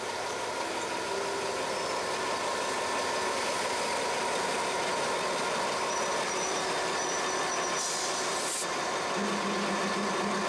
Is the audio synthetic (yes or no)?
no